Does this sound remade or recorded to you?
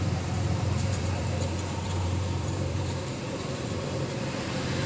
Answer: remade